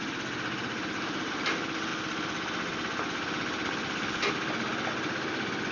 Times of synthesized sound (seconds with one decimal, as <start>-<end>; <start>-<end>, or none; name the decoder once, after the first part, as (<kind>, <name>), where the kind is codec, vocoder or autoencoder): none